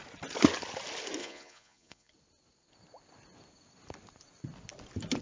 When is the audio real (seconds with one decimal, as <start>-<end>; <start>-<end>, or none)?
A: 0.0-1.2; 2.1-5.2